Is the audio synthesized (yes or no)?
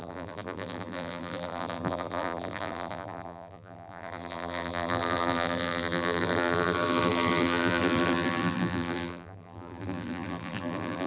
yes